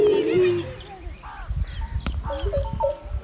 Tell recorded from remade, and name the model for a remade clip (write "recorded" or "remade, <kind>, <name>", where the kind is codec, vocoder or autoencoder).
recorded